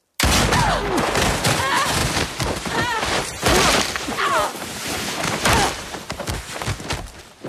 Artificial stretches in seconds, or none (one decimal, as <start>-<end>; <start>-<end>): 2.0-3.5